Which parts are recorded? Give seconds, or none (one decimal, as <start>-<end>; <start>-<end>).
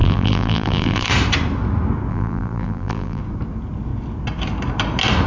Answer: 1.1-2.1; 3.2-5.3